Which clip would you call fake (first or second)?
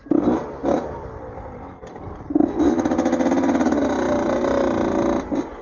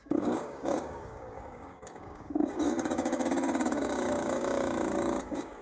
second